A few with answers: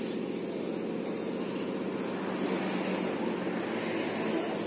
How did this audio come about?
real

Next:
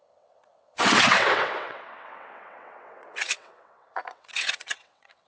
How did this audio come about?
fake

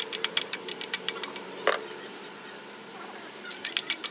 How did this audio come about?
real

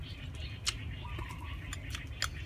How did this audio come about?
real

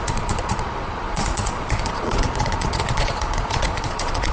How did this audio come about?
fake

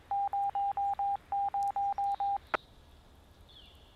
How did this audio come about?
real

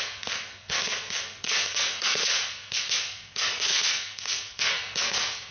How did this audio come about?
fake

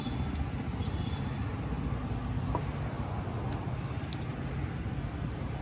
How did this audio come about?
real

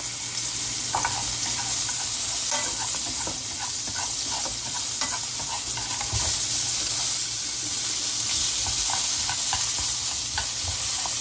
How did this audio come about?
real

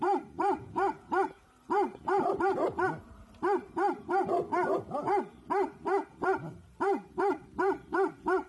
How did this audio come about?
fake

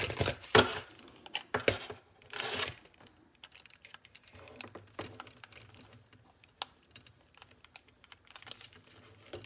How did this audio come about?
real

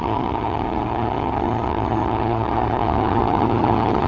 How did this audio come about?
fake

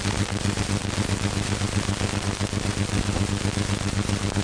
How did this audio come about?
fake